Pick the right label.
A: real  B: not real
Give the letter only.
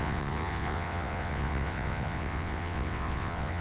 B